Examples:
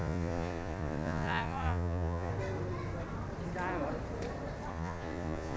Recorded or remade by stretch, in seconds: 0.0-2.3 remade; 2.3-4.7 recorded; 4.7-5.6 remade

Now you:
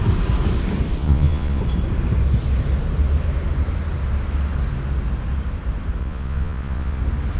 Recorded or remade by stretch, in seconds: 0.0-1.0 recorded; 1.0-1.6 remade; 1.6-6.0 recorded; 6.0-7.0 remade; 7.0-7.4 recorded

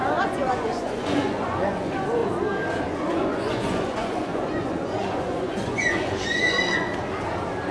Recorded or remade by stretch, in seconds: 0.0-2.2 remade; 2.2-2.9 recorded; 2.9-6.9 remade; 6.9-7.7 recorded

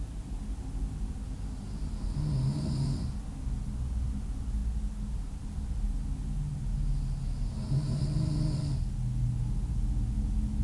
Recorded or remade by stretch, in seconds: 0.0-10.6 recorded